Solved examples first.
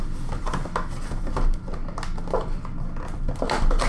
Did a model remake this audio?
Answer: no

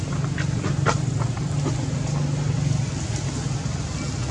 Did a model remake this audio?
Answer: no